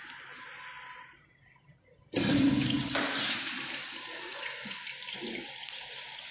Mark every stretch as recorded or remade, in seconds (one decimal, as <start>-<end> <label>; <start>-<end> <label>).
0.0-6.3 recorded